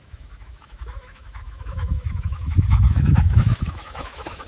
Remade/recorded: remade